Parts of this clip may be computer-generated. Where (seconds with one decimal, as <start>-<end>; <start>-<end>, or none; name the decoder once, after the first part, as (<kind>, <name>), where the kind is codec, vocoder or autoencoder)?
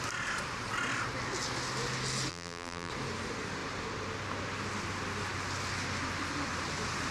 2.3-2.9 (vocoder, BigVGAN v2)